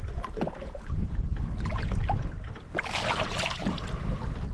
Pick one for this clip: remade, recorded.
recorded